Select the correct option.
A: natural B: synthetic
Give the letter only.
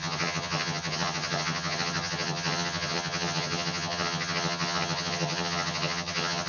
B